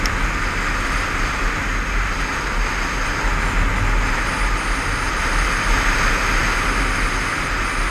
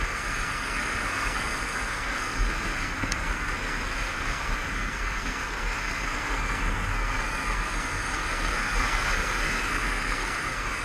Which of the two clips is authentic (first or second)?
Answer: first